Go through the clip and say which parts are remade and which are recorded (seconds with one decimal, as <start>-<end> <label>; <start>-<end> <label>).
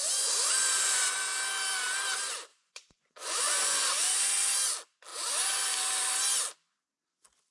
0.0-1.2 remade; 1.2-2.5 recorded; 2.5-4.3 remade; 4.3-5.1 recorded; 5.1-5.6 remade; 5.6-7.5 recorded